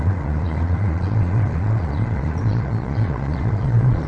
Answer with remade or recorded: remade